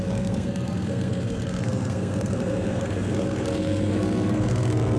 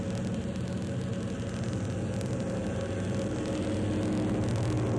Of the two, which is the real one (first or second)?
second